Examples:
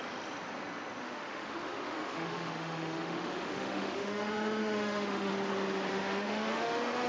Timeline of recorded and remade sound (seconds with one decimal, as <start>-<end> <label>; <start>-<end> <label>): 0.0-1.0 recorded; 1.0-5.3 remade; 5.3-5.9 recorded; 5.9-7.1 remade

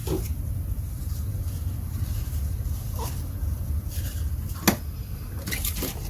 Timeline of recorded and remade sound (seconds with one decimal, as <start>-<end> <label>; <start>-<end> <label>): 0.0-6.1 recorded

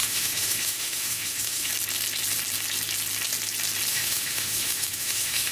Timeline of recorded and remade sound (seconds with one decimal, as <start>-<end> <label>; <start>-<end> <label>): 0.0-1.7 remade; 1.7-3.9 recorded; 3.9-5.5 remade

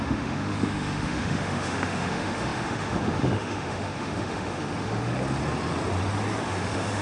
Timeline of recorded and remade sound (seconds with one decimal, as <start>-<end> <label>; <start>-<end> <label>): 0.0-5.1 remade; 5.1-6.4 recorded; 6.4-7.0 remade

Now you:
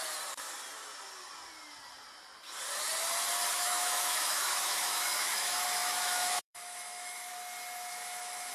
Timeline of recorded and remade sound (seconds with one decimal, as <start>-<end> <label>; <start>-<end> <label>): 0.0-3.5 recorded; 3.5-7.3 remade; 7.3-7.9 recorded; 7.9-8.5 remade

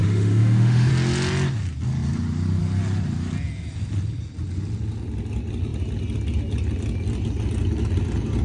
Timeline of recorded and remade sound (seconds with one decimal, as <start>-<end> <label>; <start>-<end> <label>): 0.0-0.9 remade; 0.9-8.4 recorded

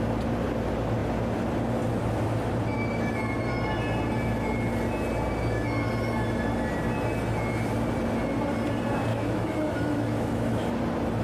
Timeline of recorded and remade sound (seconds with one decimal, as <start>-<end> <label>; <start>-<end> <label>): 0.0-9.1 recorded; 9.1-10.7 remade; 10.7-11.2 recorded